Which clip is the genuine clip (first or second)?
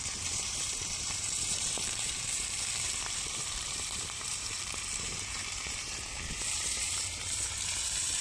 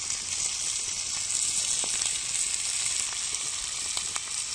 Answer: second